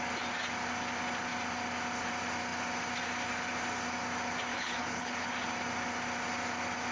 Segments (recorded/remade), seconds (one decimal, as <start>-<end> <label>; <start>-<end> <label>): 0.0-4.5 recorded; 4.5-5.3 remade; 5.3-6.9 recorded